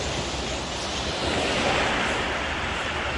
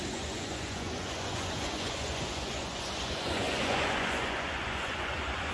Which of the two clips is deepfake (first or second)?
second